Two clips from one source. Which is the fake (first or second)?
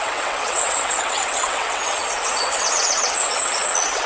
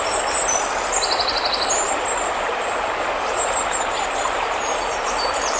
first